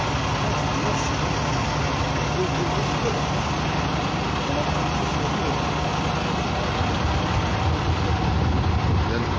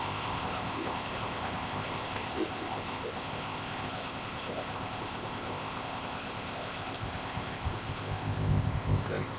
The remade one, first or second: second